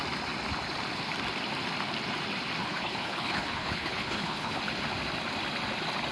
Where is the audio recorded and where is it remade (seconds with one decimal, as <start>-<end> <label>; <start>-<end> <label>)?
0.0-2.6 recorded; 2.6-4.6 remade; 4.6-6.1 recorded